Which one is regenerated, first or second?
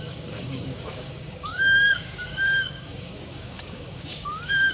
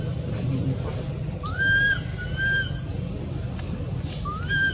first